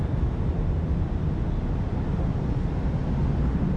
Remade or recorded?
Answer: recorded